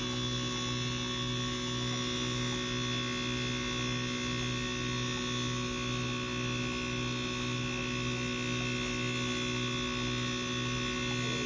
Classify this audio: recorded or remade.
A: recorded